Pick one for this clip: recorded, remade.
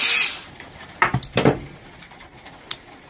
recorded